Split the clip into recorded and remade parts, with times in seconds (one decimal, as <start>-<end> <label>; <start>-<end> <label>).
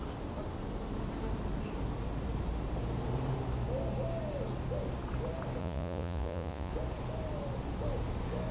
0.0-5.6 recorded; 5.6-6.7 remade; 6.7-8.5 recorded